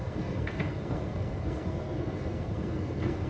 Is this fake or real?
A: fake